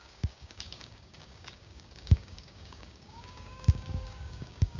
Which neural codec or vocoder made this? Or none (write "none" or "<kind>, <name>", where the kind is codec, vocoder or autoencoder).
codec, DAC